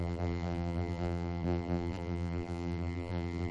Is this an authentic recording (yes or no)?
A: no